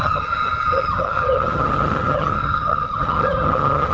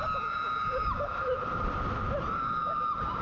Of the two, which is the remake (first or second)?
first